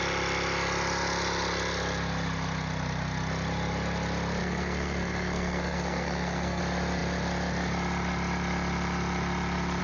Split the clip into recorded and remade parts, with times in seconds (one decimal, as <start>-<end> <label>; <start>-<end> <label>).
0.0-4.4 recorded; 4.4-6.6 remade; 6.6-9.8 recorded